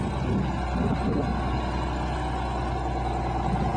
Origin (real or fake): real